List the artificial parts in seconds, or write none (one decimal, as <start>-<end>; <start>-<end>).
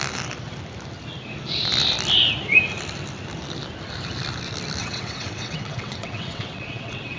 4.8-7.2